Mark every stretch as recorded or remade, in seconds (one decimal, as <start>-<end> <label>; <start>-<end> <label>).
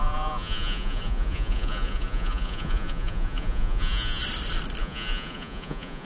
0.0-4.2 remade; 4.2-4.8 recorded; 4.8-6.0 remade